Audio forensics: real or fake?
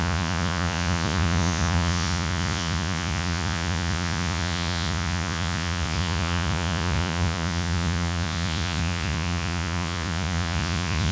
fake